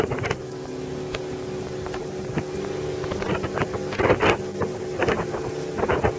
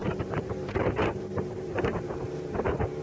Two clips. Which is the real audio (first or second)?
first